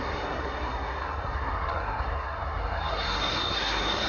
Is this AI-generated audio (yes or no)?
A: yes